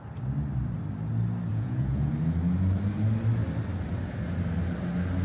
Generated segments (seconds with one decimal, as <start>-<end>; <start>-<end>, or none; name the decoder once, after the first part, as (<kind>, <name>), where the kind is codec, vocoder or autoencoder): 1.5-2.1 (vocoder, Vocos)